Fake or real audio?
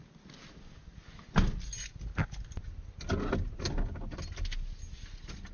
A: real